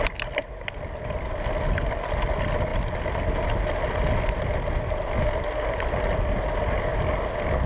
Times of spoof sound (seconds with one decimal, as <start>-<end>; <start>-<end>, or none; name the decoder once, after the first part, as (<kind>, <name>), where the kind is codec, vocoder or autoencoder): none